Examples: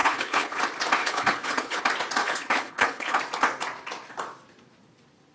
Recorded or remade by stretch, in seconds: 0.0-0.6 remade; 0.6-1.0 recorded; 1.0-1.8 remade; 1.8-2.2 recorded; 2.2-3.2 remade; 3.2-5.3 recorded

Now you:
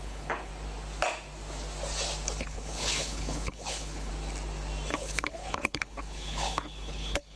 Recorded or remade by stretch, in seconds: 0.0-0.5 remade; 0.5-2.4 recorded; 2.4-4.1 remade; 4.1-4.9 recorded; 4.9-7.4 remade